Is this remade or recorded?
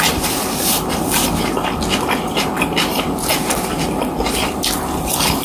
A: recorded